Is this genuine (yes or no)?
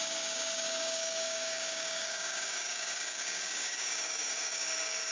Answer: no